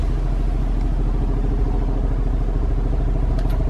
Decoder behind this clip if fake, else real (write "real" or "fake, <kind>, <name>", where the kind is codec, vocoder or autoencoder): real